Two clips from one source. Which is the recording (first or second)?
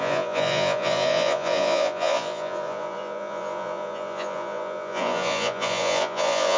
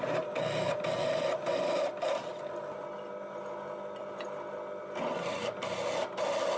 second